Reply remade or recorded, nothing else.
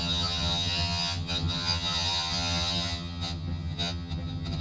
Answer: remade